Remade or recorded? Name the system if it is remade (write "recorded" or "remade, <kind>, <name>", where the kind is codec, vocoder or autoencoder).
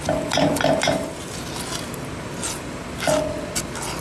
recorded